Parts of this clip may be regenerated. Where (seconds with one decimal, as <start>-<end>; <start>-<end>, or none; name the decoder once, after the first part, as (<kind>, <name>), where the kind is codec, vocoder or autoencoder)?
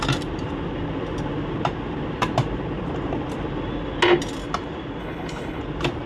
5.0-5.6 (codec, HILCodec)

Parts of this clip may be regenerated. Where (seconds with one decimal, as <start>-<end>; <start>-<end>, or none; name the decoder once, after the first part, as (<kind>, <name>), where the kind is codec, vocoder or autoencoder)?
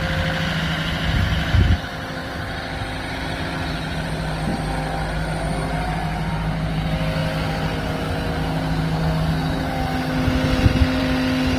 2.2-3.1 (vocoder, BigVGAN v2)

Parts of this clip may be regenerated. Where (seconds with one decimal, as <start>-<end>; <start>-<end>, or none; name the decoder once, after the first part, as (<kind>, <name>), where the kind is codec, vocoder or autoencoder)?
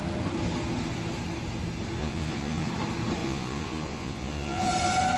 2.0-2.7 (vocoder, Vocos); 3.2-4.7